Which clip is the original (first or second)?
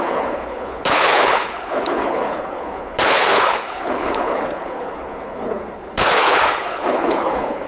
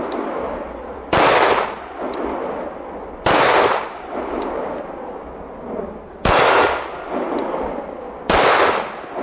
second